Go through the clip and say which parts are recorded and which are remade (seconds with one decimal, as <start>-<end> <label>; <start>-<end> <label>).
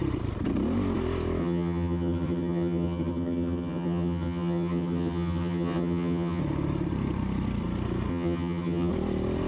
0.0-1.4 recorded; 1.4-6.4 remade; 6.4-8.1 recorded; 8.1-8.9 remade; 8.9-9.5 recorded